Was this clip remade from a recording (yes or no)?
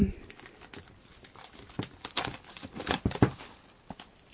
no